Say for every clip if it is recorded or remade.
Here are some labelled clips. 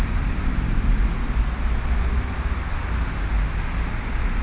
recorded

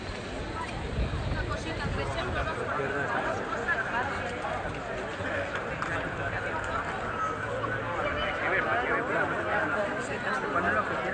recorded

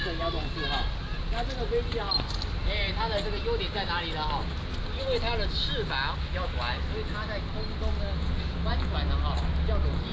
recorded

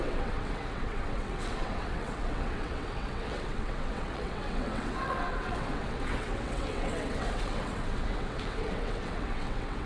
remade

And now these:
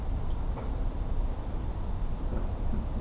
recorded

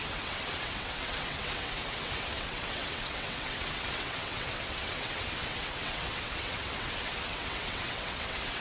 remade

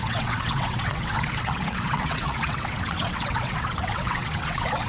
remade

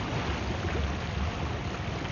recorded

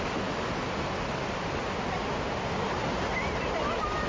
recorded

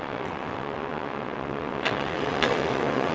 remade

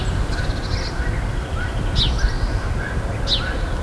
recorded